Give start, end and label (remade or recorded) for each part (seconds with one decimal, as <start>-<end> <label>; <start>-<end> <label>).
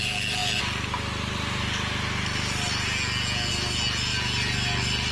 0.0-5.1 recorded